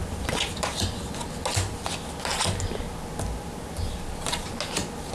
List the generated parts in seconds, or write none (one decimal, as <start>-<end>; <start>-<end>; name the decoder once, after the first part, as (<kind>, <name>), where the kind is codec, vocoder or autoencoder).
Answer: none